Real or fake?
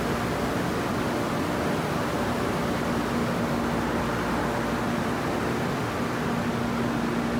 real